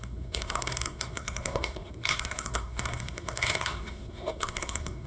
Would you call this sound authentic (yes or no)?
no